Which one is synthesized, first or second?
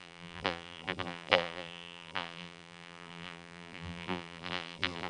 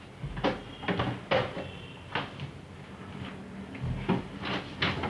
first